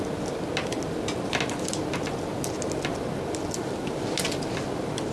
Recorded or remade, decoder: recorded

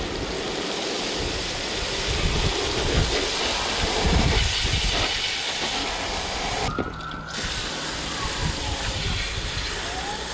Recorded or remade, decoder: recorded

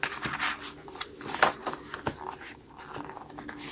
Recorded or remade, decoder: recorded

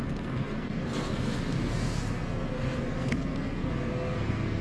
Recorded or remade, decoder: remade, codec, SNAC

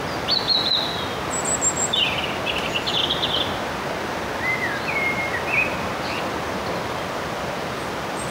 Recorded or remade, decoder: recorded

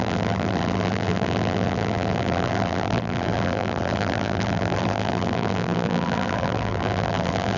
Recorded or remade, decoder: remade, vocoder, BigVGAN v2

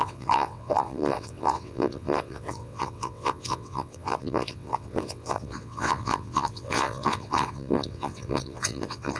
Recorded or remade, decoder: remade, vocoder, WaveNeXt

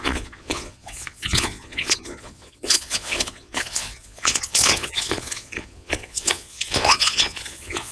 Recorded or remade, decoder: remade, vocoder, Vocos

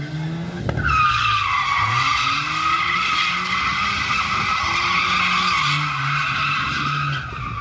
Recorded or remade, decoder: recorded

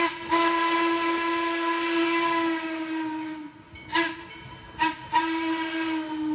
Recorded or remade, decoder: recorded